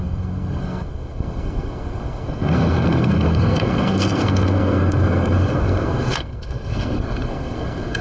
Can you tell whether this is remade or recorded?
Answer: remade